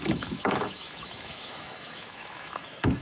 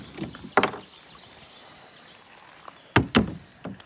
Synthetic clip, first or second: first